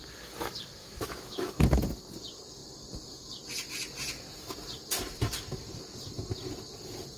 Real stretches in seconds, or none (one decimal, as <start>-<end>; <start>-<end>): 0.0-0.8; 2.0-7.2